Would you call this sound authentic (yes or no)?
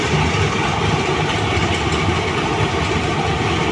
yes